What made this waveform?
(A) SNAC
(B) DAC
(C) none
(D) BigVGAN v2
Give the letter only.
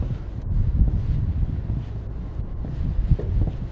C